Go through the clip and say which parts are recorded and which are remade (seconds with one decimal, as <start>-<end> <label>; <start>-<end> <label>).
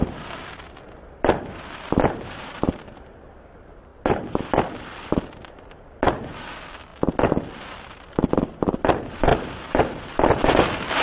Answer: 0.0-11.0 recorded